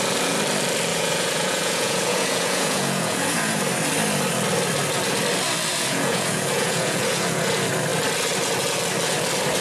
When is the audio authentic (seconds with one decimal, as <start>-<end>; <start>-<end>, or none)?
0.0-0.9; 3.6-5.7; 7.5-9.6

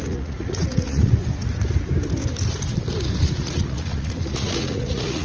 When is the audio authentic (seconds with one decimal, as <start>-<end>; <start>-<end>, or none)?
1.2-3.2

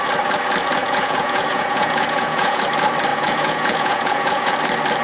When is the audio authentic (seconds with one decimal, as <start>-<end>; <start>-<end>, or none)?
0.0-0.8; 2.6-3.1; 4.5-5.0

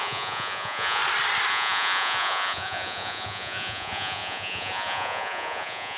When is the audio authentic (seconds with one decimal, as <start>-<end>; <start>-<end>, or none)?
1.0-1.5

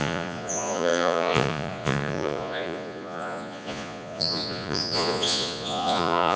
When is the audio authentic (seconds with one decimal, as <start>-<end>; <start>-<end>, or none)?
none

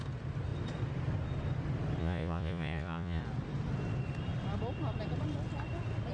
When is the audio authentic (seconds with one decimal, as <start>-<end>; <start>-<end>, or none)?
0.0-2.0; 3.2-6.1